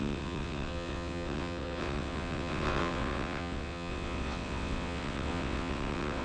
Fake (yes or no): yes